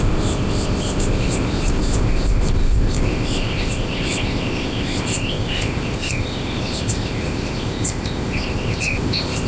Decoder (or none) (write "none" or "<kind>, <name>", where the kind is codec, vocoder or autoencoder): codec, ZipCodec